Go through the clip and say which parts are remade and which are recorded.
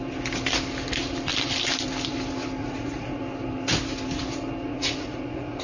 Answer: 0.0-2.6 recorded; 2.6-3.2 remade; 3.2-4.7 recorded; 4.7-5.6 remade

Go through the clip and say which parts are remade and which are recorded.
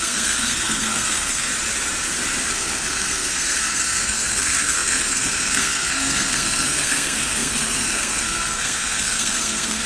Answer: 0.0-1.5 remade; 1.5-2.5 recorded; 2.5-9.9 remade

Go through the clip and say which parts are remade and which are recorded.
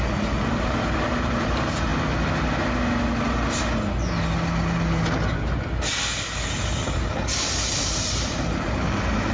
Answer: 0.0-1.9 remade; 1.9-6.4 recorded; 6.4-9.3 remade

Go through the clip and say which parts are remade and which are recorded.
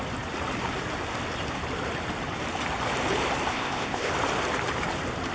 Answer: 0.0-3.5 recorded; 3.5-4.1 remade; 4.1-5.3 recorded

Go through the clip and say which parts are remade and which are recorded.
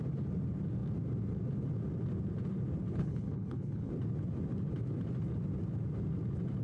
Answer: 0.0-3.0 recorded; 3.0-3.9 remade; 3.9-6.6 recorded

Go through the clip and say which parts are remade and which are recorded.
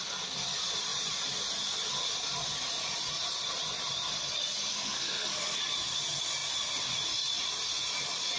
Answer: 0.0-4.7 recorded; 4.7-5.6 remade; 5.6-8.4 recorded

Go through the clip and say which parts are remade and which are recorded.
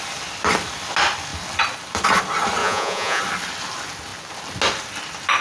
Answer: 0.0-2.6 recorded; 2.6-3.2 remade; 3.2-5.4 recorded